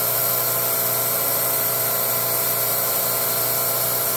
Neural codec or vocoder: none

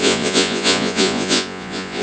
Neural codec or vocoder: vocoder, Vocos